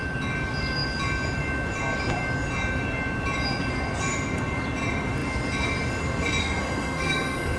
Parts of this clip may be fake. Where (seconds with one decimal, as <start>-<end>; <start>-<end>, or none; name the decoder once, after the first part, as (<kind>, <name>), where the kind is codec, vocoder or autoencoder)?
6.4-7.6 (codec, SNAC)